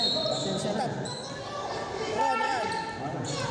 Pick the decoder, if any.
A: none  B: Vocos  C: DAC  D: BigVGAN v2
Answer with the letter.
A